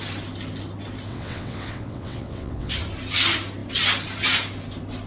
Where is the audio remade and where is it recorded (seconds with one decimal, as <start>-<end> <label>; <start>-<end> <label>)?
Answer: 0.0-1.1 recorded; 1.1-2.7 remade; 2.7-5.1 recorded